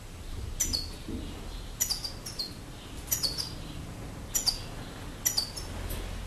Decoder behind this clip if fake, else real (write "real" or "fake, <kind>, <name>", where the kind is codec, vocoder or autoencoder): real